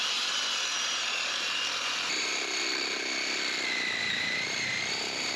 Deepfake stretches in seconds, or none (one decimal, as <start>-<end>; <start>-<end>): 0.0-2.3; 4.0-5.4